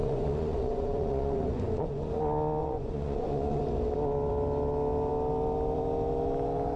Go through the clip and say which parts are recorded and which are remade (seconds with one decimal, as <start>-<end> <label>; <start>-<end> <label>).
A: 0.0-2.2 remade; 2.2-2.6 recorded; 2.6-3.6 remade; 3.6-6.8 recorded